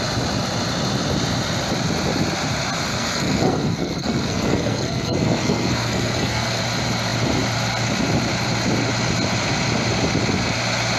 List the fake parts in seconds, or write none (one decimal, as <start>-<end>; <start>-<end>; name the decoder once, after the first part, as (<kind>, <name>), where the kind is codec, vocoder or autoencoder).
2.9-6.6 (codec, SNAC)